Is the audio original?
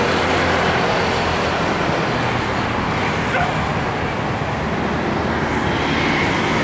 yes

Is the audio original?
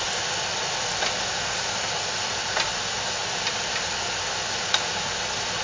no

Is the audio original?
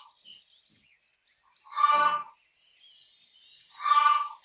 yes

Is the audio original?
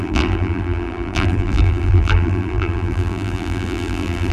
no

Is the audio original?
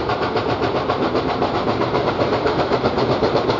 no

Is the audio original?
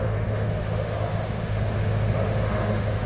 no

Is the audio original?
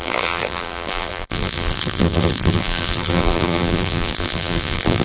no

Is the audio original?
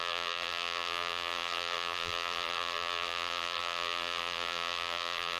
no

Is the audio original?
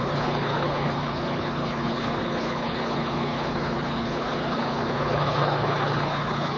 no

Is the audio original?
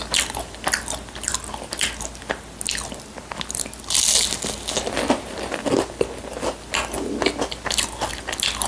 yes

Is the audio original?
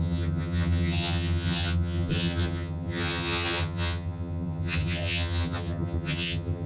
no